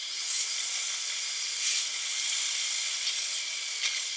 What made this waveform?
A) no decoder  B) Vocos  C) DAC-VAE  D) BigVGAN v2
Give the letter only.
A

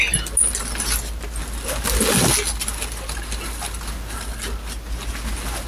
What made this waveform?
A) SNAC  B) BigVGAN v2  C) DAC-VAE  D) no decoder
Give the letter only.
D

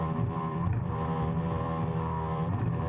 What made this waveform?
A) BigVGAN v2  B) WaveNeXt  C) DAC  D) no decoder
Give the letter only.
A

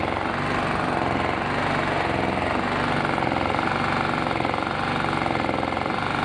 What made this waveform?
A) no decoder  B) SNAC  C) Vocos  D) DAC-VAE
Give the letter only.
A